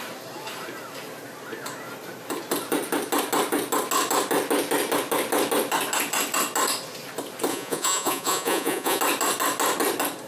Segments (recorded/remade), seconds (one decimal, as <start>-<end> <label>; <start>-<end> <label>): 0.0-7.5 recorded; 7.5-9.0 remade; 9.0-10.3 recorded